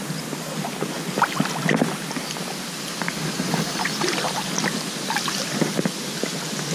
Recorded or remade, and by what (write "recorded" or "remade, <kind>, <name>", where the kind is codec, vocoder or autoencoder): recorded